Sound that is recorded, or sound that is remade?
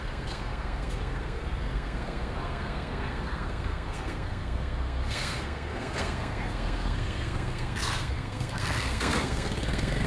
remade